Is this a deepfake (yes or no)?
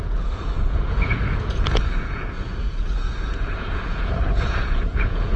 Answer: yes